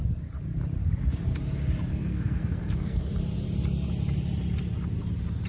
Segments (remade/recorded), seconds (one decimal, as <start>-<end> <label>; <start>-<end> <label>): 0.0-1.9 recorded; 1.9-3.1 remade; 3.1-5.5 recorded